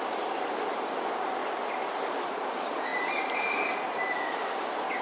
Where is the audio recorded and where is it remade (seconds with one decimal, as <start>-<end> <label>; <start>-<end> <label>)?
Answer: 0.0-5.0 recorded